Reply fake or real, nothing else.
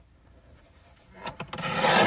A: real